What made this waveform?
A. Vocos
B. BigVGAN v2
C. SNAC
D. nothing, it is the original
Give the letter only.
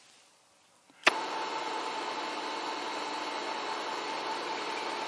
D